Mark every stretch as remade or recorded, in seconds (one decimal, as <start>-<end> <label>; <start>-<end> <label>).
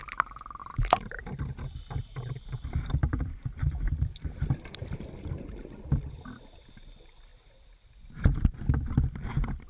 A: 0.0-7.3 recorded; 7.3-8.6 remade; 8.6-9.7 recorded